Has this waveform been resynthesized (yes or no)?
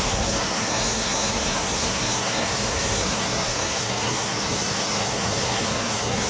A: yes